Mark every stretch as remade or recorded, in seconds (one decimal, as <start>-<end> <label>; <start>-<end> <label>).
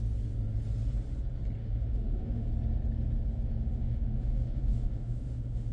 0.0-1.6 recorded; 1.6-2.5 remade; 2.5-3.5 recorded; 3.5-5.7 remade